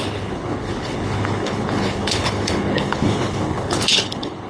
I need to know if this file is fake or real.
fake